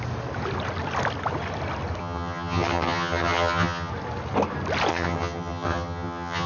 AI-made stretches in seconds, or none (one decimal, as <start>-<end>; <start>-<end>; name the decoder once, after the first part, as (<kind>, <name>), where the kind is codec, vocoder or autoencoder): 2.0-3.9 (vocoder, HiFi-GAN); 4.9-6.5